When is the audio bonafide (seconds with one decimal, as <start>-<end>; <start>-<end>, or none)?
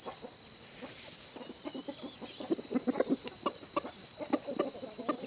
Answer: none